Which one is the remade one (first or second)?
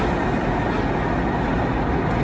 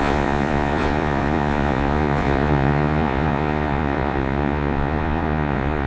second